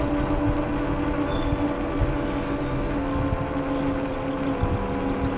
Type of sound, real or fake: real